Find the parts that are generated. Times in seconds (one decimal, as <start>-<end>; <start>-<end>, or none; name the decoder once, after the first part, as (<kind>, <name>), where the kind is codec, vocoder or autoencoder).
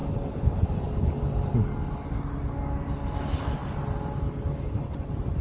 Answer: none